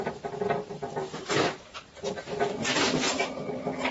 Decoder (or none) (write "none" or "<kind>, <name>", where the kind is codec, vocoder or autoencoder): none